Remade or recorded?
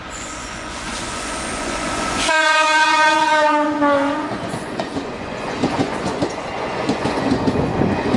remade